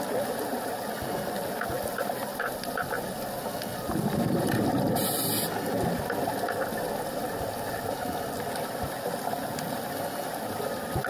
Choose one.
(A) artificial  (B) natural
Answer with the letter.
B